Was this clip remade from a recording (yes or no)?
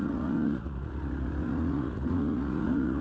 yes